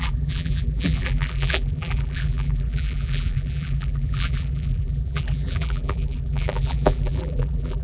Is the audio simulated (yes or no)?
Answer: yes